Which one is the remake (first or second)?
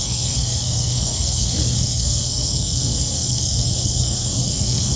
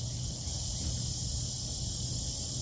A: first